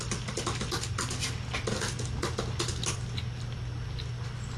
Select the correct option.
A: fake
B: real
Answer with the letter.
B